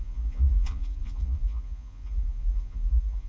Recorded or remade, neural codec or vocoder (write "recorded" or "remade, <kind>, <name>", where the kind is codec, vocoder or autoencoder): remade, vocoder, Vocos